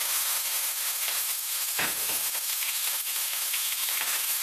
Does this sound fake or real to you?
fake